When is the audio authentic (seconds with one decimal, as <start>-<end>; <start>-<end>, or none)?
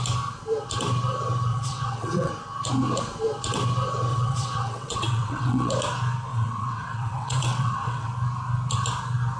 0.0-1.5; 2.3-4.1; 5.7-6.3; 8.1-9.4